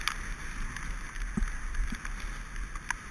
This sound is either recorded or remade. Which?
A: recorded